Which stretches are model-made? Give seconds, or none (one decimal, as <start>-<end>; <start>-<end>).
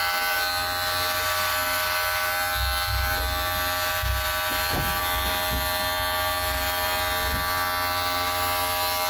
none